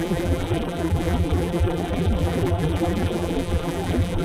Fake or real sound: fake